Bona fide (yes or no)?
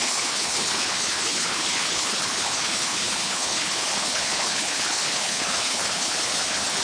no